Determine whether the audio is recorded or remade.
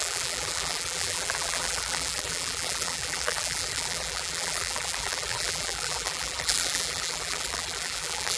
remade